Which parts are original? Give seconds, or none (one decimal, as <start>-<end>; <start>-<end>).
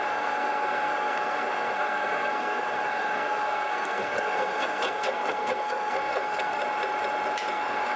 6.6-7.5